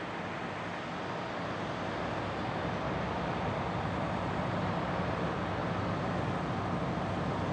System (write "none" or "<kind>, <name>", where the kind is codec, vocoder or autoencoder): none